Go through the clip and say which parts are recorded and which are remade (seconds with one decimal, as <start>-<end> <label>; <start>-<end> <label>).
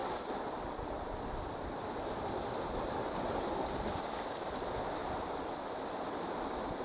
0.0-6.8 recorded